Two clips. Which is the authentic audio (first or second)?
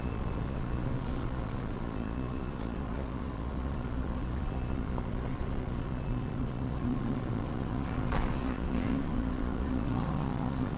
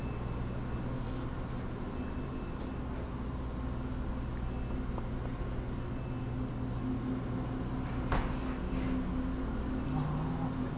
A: second